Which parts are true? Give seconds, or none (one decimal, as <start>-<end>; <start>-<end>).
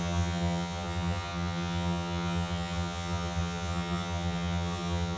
none